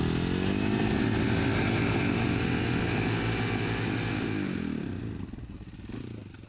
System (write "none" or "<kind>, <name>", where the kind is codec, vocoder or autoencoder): none